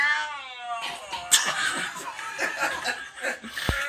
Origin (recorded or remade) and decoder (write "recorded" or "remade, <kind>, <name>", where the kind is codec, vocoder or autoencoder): recorded